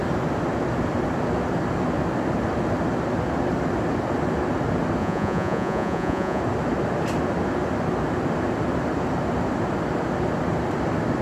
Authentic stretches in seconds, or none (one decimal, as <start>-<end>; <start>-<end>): 0.0-5.0; 6.4-11.2